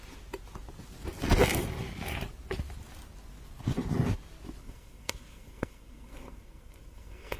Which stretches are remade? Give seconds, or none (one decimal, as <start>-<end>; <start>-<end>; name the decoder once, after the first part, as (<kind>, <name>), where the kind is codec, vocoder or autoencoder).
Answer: 4.6-7.4 (codec, SNAC)